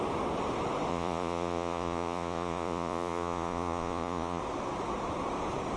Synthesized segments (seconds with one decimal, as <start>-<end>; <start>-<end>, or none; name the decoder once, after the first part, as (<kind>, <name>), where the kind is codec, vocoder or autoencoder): 0.9-4.4 (vocoder, Vocos)

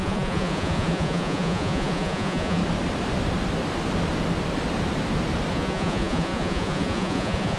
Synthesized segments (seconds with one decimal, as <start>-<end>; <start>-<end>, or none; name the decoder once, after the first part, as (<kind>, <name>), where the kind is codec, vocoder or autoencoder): 0.0-2.6 (vocoder, Vocos); 5.5-7.6